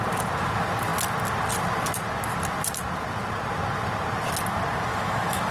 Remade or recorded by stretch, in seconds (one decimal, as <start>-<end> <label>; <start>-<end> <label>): 0.0-4.9 recorded; 4.9-5.5 remade

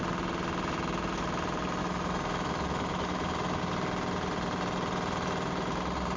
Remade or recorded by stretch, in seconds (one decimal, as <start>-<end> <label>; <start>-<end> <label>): 0.0-1.8 recorded; 1.8-3.6 remade; 3.6-6.2 recorded